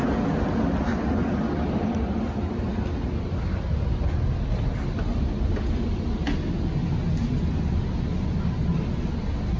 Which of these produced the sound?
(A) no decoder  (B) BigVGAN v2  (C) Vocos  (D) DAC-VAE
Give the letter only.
A